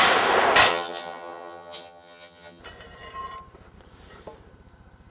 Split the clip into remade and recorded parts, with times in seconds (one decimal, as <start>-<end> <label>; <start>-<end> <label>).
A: 0.0-0.7 recorded; 0.7-2.6 remade; 2.6-5.1 recorded